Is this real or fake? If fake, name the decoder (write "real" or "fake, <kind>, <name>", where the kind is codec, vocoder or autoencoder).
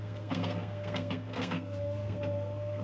fake, codec, SNAC